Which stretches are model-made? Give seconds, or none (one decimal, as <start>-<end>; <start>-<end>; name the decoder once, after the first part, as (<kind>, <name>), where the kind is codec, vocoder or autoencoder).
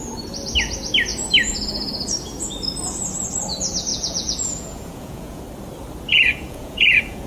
3.9-5.4 (vocoder, Vocos); 6.1-7.3